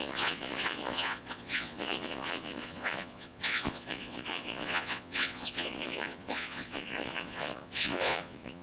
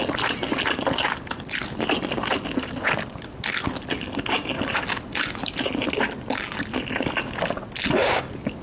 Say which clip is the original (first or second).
second